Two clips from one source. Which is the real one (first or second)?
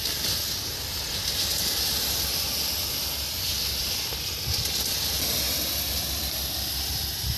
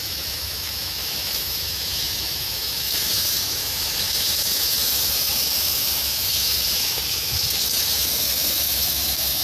first